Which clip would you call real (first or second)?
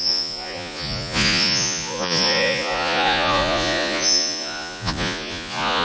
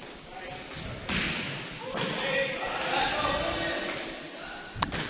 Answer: second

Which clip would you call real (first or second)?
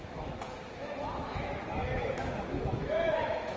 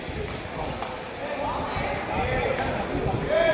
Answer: second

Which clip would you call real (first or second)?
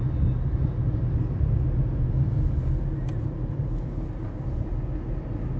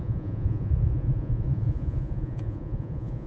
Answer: first